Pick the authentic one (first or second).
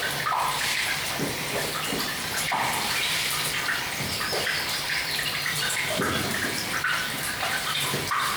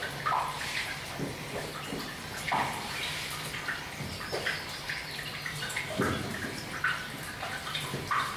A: second